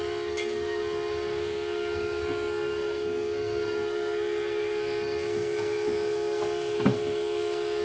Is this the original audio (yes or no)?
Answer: no